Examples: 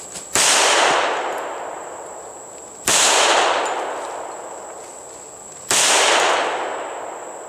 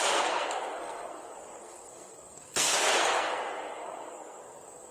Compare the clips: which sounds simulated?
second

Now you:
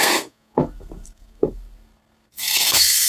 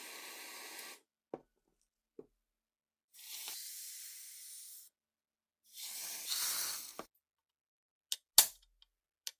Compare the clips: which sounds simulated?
first